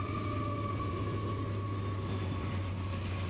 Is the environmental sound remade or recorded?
recorded